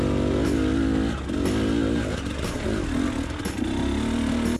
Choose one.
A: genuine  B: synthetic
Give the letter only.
A